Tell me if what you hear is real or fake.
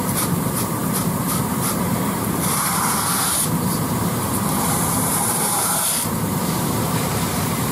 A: fake